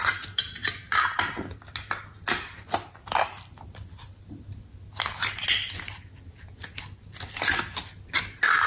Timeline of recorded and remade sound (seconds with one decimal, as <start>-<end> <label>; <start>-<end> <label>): 0.0-8.7 recorded